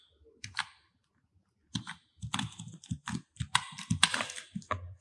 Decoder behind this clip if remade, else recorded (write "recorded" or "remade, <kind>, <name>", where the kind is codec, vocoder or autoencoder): recorded